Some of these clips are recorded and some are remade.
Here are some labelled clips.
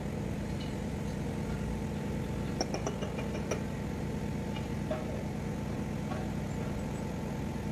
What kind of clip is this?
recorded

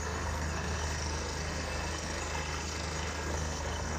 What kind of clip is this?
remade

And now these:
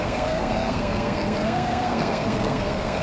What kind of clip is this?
remade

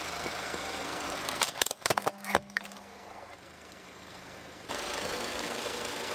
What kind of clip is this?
remade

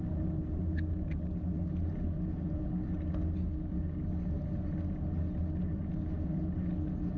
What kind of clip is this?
recorded